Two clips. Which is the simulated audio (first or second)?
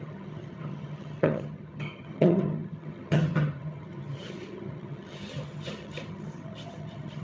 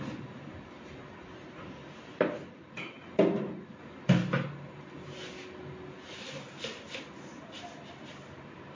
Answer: first